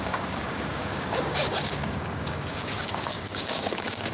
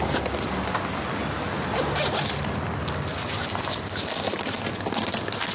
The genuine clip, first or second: second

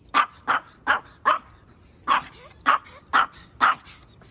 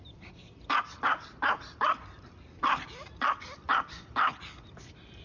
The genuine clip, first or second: first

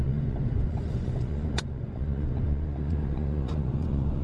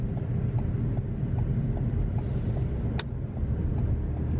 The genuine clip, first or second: second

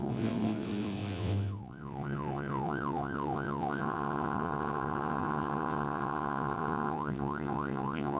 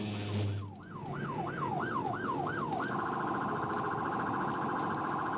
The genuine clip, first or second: second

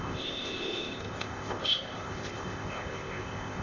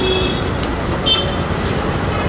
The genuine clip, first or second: second